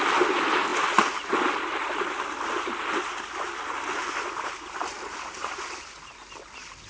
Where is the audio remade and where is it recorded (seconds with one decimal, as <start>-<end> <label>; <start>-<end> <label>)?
0.0-6.9 recorded